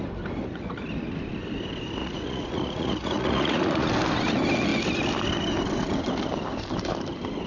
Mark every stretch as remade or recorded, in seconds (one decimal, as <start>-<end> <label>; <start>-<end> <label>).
0.0-0.4 recorded; 0.4-0.9 remade; 0.9-2.0 recorded; 2.0-3.9 remade; 3.9-7.5 recorded